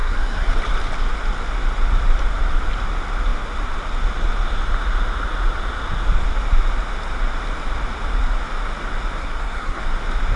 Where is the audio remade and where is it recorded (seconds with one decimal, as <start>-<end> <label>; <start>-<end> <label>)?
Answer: 0.0-0.5 remade; 0.5-9.2 recorded; 9.2-9.8 remade; 9.8-10.4 recorded